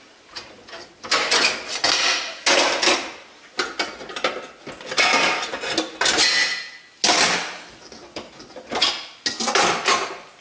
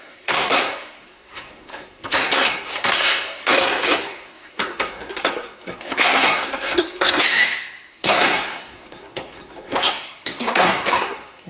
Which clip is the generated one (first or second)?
second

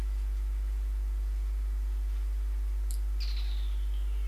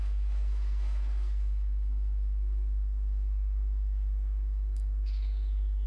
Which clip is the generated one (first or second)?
second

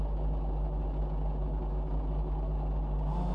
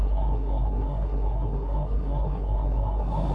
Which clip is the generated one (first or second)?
second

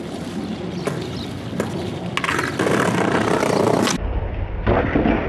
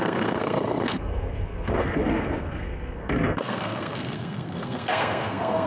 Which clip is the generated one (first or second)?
second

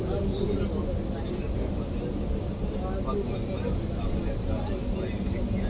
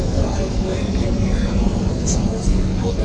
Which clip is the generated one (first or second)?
second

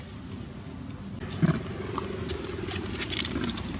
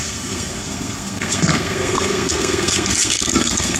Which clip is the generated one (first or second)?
second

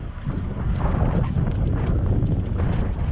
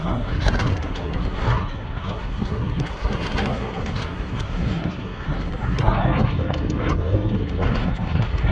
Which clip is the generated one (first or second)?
second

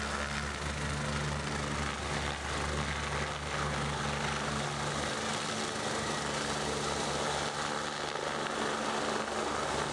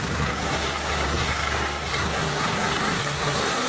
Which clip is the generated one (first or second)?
second